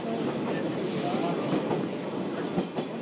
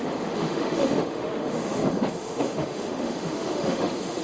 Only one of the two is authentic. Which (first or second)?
first